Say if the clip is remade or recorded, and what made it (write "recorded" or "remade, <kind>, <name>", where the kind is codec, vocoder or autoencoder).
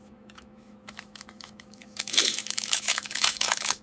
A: remade, autoencoder, DAC-VAE